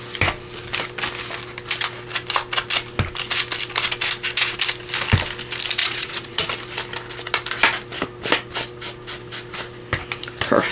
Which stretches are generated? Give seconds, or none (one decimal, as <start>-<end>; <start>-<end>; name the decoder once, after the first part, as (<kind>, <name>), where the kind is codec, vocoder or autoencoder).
5.8-6.5 (vocoder, Vocos)